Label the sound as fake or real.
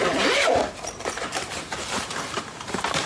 fake